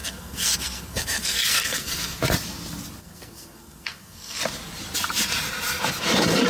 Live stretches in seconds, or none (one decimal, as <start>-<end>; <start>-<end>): 2.2-3.0; 4.4-6.5